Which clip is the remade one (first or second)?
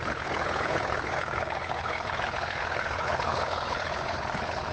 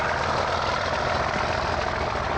first